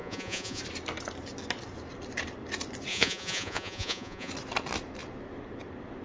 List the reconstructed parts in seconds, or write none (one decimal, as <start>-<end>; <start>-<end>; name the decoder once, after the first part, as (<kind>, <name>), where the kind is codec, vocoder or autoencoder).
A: 0.0-0.6 (vocoder, Vocos); 2.9-4.3